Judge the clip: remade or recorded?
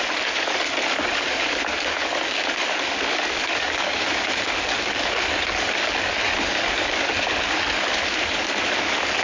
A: remade